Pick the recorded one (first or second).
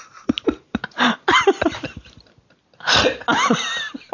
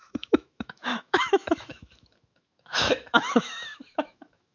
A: first